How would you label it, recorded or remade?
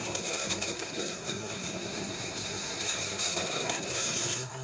remade